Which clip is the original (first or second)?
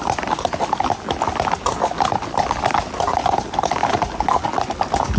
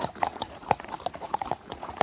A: first